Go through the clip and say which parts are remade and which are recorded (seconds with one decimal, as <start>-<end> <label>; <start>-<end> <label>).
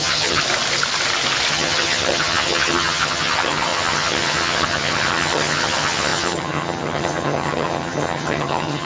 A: 0.0-0.4 remade; 0.4-1.5 recorded; 1.5-8.9 remade